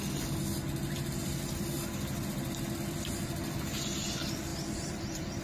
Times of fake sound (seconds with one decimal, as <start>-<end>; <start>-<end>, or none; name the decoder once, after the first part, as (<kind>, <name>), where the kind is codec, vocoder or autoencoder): none

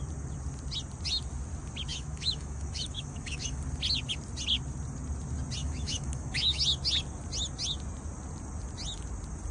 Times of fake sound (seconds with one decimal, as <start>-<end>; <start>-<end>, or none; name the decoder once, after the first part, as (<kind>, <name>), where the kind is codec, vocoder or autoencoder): 1.9-3.6 (autoencoder, DAC-VAE); 5.6-6.6

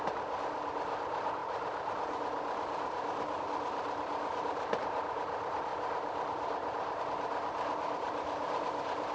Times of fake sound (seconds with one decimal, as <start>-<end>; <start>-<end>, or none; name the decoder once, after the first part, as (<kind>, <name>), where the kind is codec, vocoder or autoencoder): none